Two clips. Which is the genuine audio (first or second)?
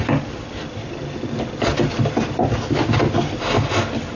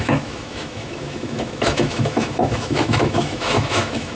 first